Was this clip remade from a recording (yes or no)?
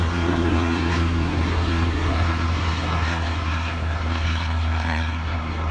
yes